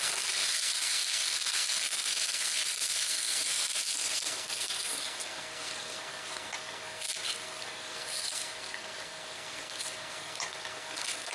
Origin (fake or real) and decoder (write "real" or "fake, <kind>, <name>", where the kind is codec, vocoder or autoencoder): fake, codec, SNAC